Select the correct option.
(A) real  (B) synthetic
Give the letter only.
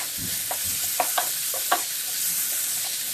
A